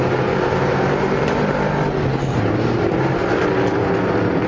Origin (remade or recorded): remade